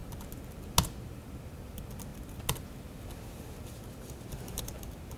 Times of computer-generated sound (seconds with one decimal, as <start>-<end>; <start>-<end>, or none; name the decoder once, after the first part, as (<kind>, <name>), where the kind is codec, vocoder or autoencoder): none